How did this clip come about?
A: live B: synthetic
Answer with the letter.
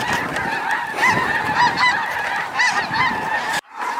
B